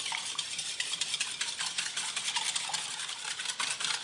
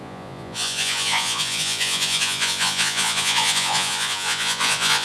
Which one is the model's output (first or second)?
second